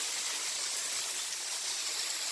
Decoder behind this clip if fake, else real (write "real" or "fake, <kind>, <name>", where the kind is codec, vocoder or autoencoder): real